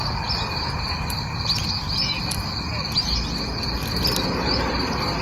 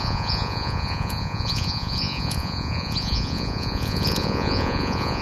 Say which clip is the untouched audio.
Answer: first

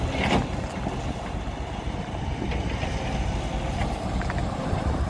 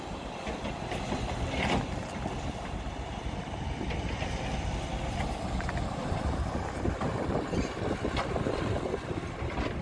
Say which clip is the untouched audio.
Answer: first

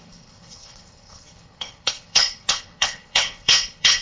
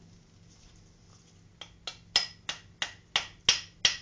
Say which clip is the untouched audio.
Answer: second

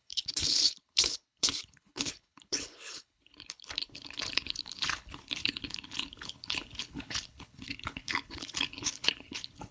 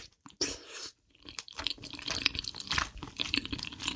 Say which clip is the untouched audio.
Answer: second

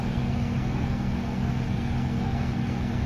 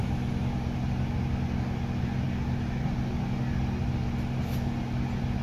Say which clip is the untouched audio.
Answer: second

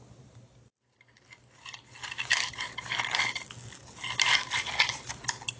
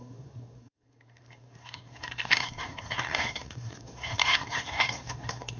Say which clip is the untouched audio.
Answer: first